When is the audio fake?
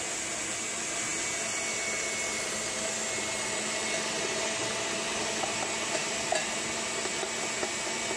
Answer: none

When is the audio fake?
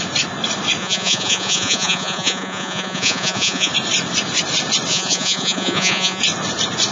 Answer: 0.8-3.7 (vocoder, Vocos); 4.9-6.2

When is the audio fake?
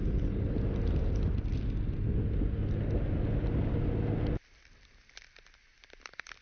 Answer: none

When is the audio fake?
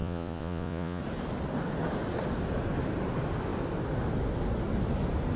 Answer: 0.0-1.0 (vocoder, Vocos)